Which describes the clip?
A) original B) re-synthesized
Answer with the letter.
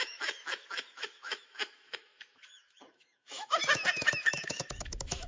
B